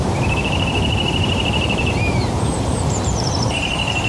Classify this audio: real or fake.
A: fake